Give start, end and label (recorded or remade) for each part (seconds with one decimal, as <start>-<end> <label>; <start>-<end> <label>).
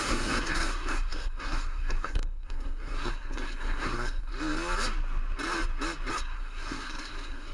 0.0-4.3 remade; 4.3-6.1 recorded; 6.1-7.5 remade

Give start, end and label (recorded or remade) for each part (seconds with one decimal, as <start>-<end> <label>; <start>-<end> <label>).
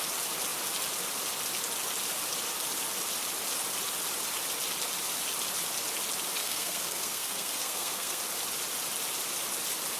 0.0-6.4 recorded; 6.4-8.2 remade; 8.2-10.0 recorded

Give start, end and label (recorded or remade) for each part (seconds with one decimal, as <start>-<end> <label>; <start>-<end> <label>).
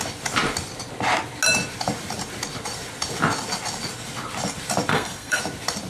0.0-4.9 recorded; 4.9-5.4 remade; 5.4-5.9 recorded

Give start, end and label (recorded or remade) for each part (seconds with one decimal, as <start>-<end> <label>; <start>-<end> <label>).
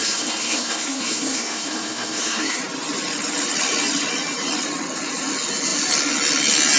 0.0-2.6 remade; 2.6-6.8 recorded